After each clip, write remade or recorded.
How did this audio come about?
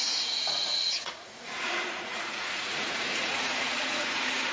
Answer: remade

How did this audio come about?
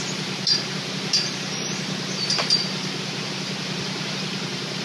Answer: recorded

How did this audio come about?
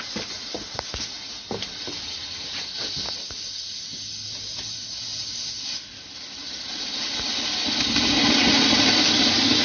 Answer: recorded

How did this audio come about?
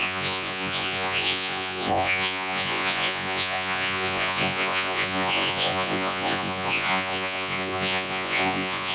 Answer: remade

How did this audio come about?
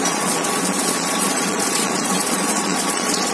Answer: remade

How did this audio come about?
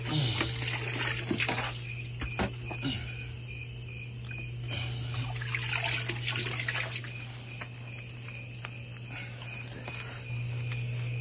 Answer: recorded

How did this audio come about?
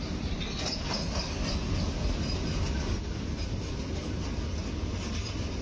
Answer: recorded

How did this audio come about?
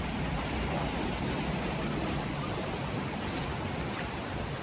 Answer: recorded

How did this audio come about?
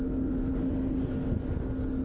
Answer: recorded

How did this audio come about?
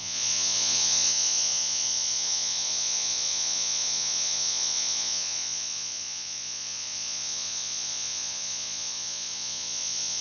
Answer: remade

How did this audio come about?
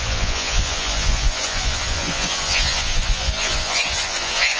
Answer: remade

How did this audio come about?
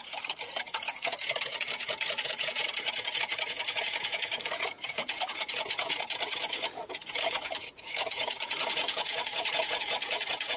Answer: remade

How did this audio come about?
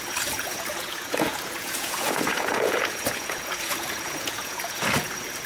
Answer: remade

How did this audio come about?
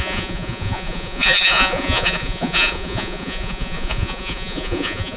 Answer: remade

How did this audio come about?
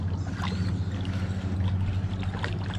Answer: recorded